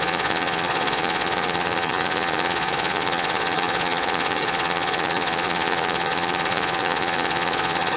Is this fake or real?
fake